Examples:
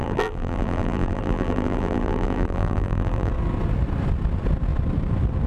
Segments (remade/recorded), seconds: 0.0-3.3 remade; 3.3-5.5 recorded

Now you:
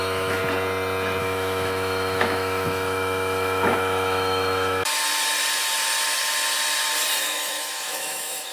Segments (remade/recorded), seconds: 0.0-0.4 remade; 0.4-1.2 recorded; 1.2-5.0 remade; 5.0-7.2 recorded; 7.2-8.5 remade

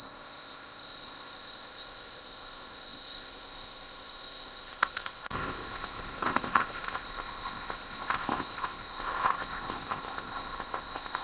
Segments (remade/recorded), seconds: 0.0-11.2 remade

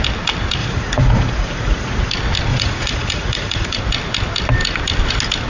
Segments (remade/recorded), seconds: 0.0-0.6 recorded; 0.6-2.1 remade; 2.1-2.5 recorded; 2.5-3.8 remade; 3.8-5.5 recorded

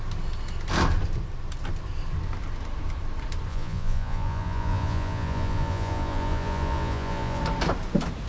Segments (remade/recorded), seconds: 0.0-3.5 recorded; 3.5-7.4 remade; 7.4-8.3 recorded

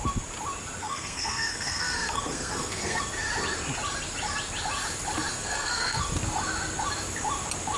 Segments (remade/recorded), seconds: 0.0-0.8 recorded; 0.8-3.0 remade; 3.0-5.3 recorded; 5.3-6.0 remade; 6.0-7.8 recorded

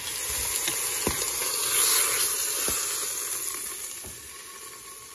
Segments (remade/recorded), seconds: 0.0-5.1 recorded

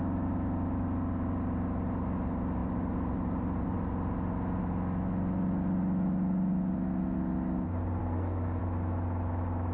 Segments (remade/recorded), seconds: 0.0-8.0 recorded; 8.0-8.6 remade; 8.6-9.7 recorded